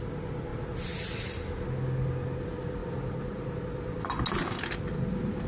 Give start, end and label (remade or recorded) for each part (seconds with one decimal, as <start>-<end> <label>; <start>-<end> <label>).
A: 0.0-2.8 recorded; 2.8-3.6 remade; 3.6-5.5 recorded